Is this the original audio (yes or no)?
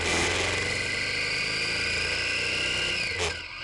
yes